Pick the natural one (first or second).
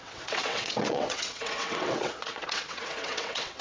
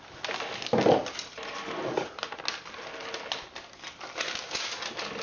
second